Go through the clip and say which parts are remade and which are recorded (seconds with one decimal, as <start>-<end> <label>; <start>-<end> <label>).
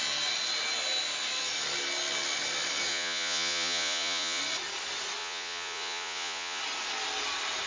0.0-2.9 recorded; 2.9-4.4 remade; 4.4-5.2 recorded; 5.2-6.6 remade; 6.6-7.7 recorded